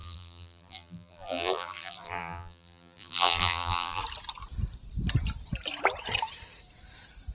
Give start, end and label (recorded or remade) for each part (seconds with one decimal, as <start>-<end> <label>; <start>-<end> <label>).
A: 0.0-4.0 remade; 4.0-7.3 recorded